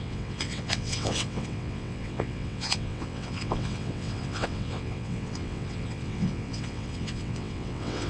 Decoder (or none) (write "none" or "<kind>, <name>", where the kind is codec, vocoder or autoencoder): vocoder, WaveNeXt